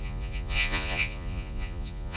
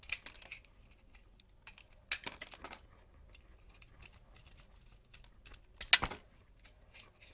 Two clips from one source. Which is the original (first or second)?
second